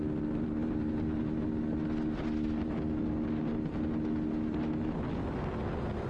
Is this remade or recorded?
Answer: recorded